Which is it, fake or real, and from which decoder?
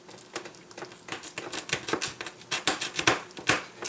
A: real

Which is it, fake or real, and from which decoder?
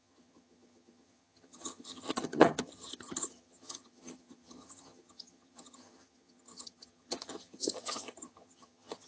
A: fake, vocoder, HiFi-GAN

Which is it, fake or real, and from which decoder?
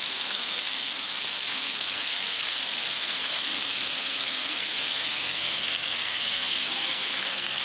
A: fake, codec, SNAC